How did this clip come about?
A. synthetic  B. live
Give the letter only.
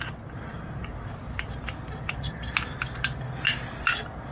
B